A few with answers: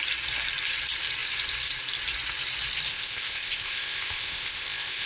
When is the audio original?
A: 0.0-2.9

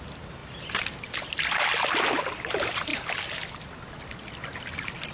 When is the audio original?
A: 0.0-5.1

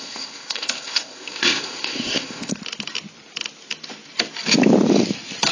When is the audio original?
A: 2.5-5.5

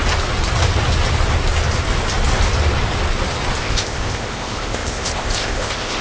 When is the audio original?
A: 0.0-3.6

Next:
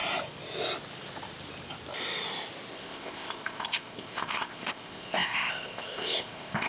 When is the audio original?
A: 0.0-2.7

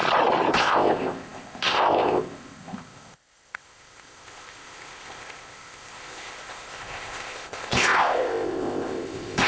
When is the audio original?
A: 0.0-0.5